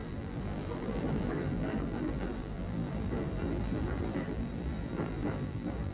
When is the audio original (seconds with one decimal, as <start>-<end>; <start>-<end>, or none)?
none